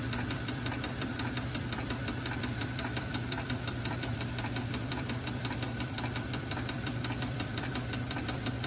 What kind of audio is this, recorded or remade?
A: remade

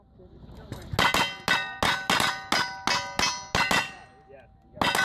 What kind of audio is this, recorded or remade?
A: recorded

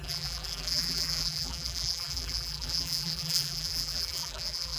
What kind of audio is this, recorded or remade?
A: remade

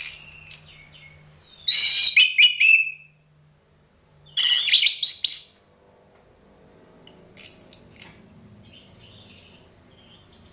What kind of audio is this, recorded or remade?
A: recorded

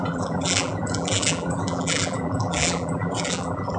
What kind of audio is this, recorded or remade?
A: remade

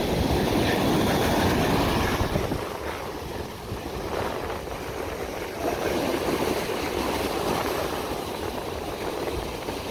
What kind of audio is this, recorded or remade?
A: recorded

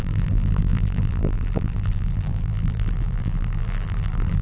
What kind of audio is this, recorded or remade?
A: remade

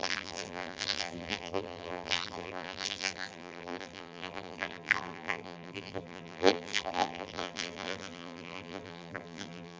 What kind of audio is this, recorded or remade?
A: remade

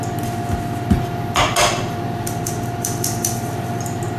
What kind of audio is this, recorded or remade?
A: recorded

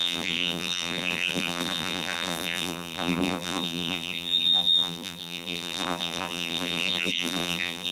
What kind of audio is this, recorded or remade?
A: remade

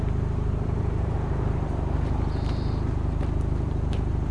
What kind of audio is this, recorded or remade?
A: remade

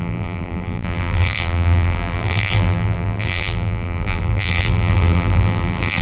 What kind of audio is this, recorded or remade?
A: remade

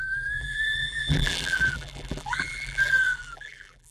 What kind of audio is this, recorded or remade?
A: remade